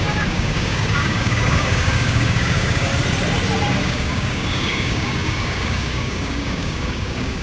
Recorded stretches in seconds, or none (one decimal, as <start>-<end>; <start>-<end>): 2.9-3.8